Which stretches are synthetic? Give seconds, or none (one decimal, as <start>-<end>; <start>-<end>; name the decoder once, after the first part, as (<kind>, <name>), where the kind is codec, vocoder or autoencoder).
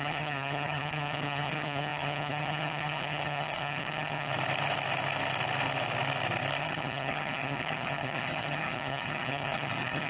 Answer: 0.0-4.3 (vocoder, HiFi-GAN); 6.6-10.1